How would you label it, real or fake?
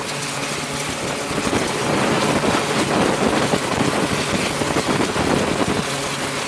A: real